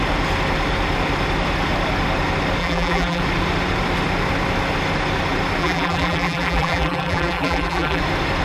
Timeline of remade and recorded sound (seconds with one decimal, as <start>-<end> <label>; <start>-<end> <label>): 0.0-2.6 recorded; 2.6-3.2 remade; 3.2-5.6 recorded; 5.6-8.0 remade; 8.0-8.4 recorded